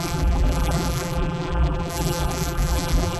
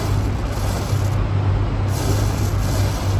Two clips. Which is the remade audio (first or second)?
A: first